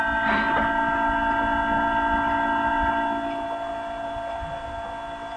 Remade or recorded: recorded